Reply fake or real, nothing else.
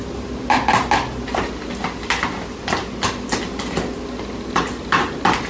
real